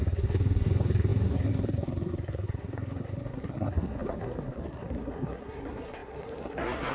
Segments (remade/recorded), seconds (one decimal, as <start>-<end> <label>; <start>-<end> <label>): 0.0-6.9 remade